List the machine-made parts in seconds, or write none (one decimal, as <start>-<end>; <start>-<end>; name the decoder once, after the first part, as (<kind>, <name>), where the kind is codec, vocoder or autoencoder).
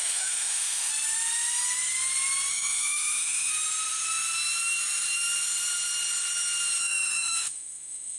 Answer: 0.0-0.9 (autoencoder, DAC-VAE); 2.5-3.5; 6.8-8.2